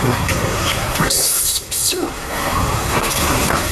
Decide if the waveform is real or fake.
fake